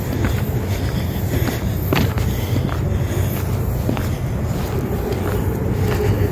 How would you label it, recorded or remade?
recorded